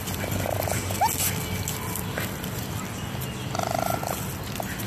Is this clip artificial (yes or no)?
no